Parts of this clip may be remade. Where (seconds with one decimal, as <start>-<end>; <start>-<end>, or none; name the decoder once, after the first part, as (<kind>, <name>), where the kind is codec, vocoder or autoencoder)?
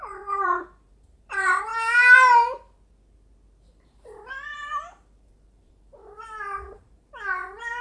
0.0-1.7 (vocoder, BigVGAN v2); 3.7-7.8